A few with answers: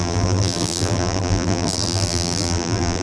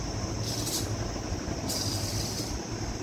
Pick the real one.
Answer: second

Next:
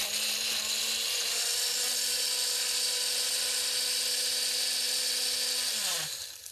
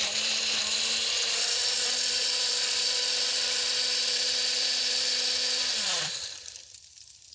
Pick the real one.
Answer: first